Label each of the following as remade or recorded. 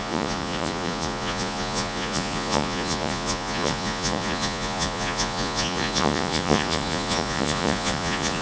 remade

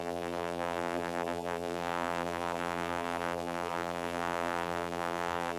remade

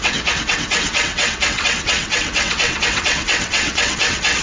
remade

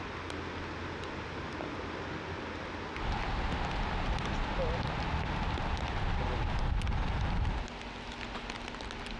recorded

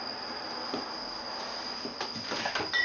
recorded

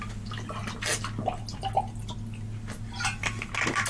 recorded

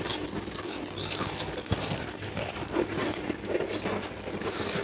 recorded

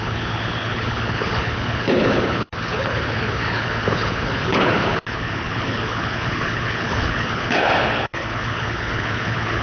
remade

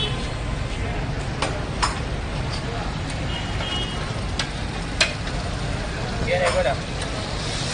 recorded